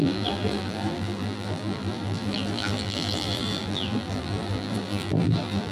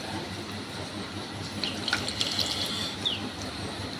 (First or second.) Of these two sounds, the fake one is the first